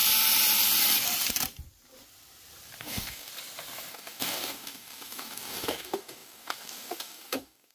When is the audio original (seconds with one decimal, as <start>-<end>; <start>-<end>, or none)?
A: 0.0-2.8; 3.3-3.9